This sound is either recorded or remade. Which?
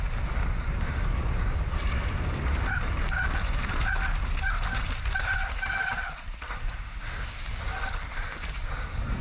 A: recorded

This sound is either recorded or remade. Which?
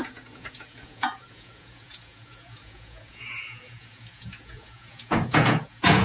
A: remade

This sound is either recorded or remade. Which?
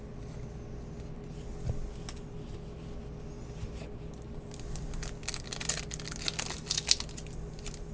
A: recorded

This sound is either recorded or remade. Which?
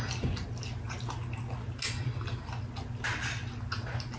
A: recorded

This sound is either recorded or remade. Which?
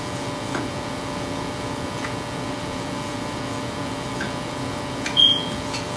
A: remade